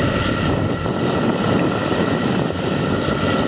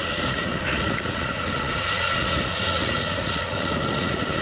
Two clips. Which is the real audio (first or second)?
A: first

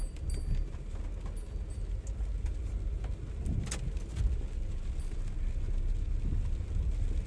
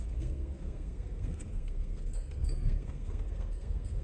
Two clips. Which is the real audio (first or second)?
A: first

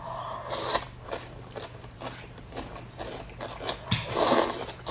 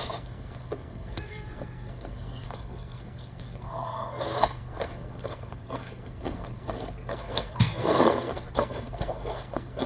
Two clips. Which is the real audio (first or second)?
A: first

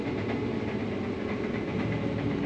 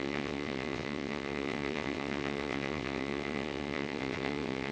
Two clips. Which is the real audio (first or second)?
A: first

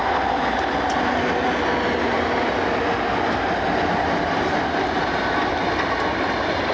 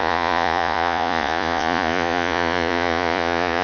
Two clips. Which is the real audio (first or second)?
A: first